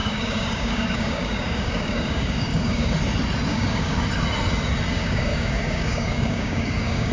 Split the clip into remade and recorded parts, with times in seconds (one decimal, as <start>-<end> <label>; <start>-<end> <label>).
0.0-2.9 remade; 2.9-3.5 recorded; 3.5-4.0 remade; 4.0-4.9 recorded; 4.9-7.1 remade